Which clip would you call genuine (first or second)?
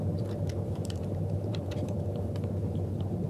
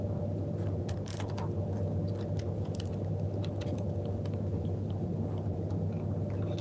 second